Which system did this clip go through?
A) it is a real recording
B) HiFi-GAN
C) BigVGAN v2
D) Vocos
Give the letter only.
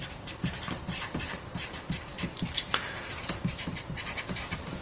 C